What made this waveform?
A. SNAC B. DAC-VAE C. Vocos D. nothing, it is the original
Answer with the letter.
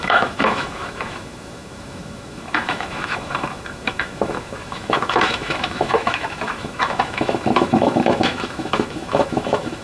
B